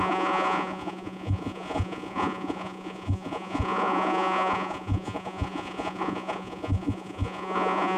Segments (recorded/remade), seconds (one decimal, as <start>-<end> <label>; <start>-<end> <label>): 0.0-8.0 remade